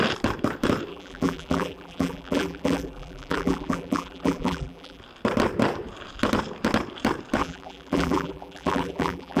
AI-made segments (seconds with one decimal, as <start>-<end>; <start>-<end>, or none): 0.9-5.0; 7.4-9.4